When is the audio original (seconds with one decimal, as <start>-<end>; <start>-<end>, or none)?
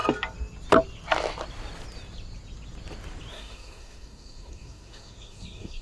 0.0-3.3